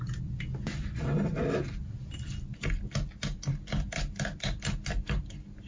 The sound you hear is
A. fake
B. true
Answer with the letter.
B